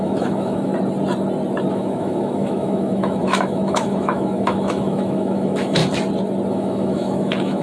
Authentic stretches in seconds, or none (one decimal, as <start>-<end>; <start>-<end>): 0.7-1.7; 5.8-6.5